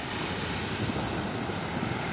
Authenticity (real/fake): real